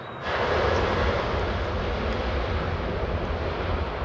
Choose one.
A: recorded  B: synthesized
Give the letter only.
A